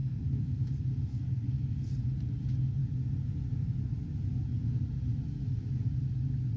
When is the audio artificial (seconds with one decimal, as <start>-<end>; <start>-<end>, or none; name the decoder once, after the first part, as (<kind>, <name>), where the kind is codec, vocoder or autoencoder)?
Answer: 0.0-0.6 (codec, SNAC); 1.1-1.9